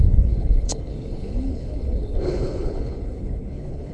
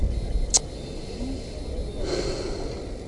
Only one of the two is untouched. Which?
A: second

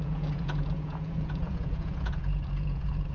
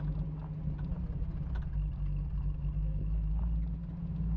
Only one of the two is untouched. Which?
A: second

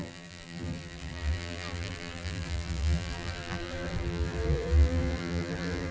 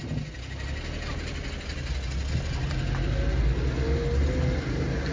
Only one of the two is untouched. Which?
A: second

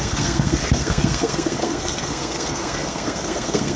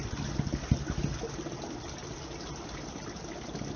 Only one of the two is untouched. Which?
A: second